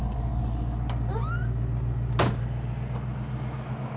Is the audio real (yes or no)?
yes